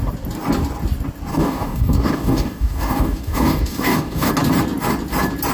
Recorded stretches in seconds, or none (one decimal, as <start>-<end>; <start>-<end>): 0.0-1.3; 4.3-5.5

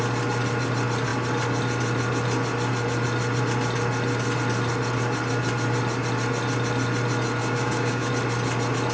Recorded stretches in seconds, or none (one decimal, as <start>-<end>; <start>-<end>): 0.0-7.4; 8.1-8.9

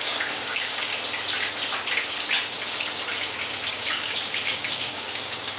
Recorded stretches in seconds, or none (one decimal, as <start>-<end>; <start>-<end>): 0.9-3.7

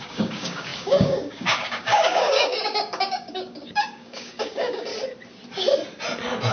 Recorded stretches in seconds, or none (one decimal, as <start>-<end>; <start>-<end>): 4.9-6.5

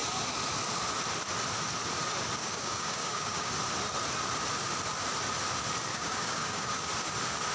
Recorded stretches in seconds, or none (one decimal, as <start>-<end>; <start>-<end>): 0.0-2.4; 3.5-5.9; 6.9-7.5

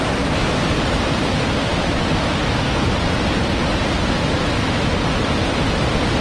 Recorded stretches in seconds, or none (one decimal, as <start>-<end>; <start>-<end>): 0.0-6.2

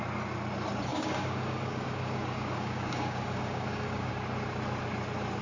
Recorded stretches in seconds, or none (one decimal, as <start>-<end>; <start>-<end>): 0.0-0.9; 4.1-5.4

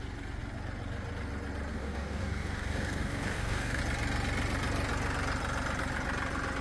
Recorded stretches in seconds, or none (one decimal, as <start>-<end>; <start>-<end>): 0.0-1.7; 3.8-6.6